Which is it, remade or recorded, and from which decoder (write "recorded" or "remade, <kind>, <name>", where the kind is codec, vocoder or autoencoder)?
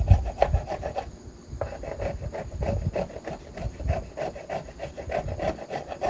recorded